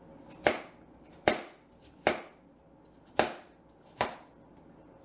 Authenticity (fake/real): real